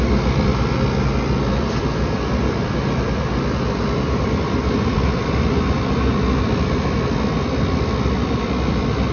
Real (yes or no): yes